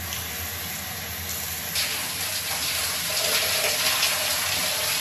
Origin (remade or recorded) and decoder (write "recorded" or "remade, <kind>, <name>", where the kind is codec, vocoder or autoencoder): recorded